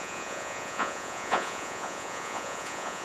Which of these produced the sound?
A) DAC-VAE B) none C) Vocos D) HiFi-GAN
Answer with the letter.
C